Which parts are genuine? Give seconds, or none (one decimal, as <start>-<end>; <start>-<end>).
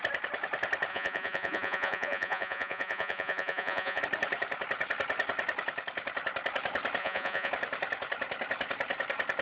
0.0-0.9; 4.0-7.0; 7.5-9.4